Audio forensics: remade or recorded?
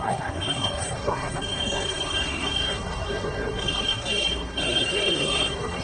remade